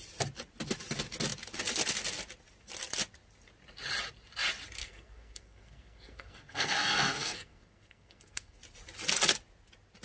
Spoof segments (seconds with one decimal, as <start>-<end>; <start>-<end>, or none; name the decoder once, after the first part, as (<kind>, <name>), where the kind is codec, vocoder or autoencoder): 4.8-8.6 (codec, SNAC)